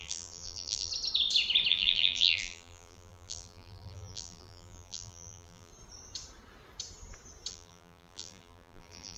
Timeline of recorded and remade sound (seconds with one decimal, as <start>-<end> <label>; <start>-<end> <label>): 0.0-0.9 remade; 0.9-1.7 recorded; 1.7-5.7 remade; 5.7-7.5 recorded; 7.5-9.2 remade